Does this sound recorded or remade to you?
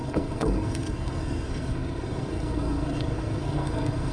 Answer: remade